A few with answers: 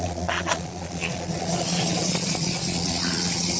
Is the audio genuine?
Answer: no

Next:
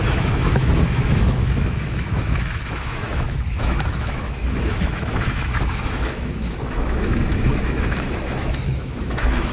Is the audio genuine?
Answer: no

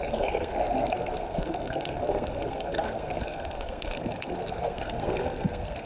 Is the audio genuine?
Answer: no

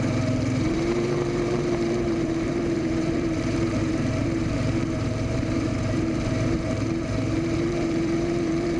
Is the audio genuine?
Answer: no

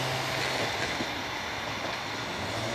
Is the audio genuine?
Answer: yes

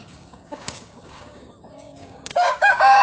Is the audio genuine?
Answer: no